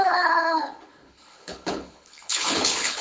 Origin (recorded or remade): remade